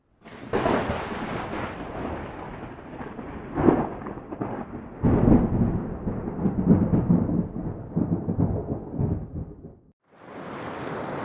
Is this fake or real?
real